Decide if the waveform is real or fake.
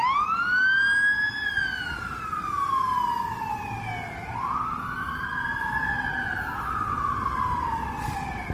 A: real